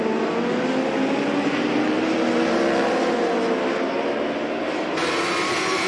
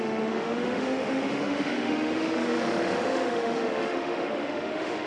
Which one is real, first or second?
first